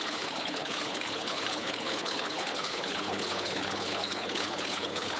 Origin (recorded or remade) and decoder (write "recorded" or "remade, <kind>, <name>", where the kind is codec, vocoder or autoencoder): remade, codec, HILCodec